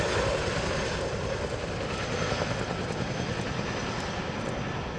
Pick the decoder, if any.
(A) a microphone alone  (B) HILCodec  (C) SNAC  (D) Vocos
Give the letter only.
A